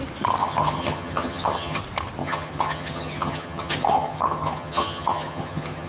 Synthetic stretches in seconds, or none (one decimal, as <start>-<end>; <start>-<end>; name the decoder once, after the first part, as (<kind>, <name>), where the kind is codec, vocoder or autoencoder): 0.4-1.8 (vocoder, HiFi-GAN); 2.2-5.9